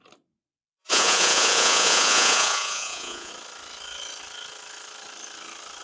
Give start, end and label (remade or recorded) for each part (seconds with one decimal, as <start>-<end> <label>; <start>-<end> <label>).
0.0-0.8 recorded; 0.8-3.3 remade; 3.3-5.8 recorded